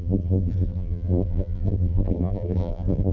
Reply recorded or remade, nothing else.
remade